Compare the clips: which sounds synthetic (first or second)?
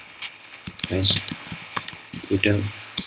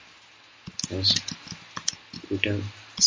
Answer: first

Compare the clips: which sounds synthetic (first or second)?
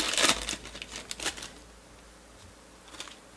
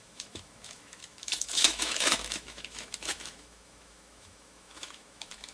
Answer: second